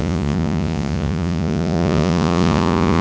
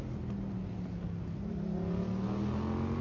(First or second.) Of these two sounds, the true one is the second